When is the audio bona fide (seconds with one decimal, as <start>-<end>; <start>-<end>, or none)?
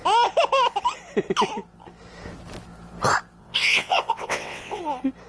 0.0-3.4; 4.8-5.3